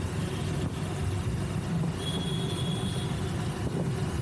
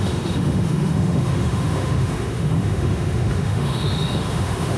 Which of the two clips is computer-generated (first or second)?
second